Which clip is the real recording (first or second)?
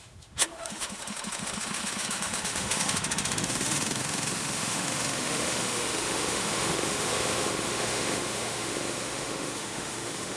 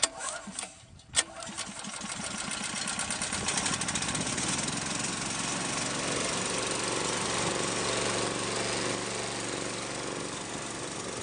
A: second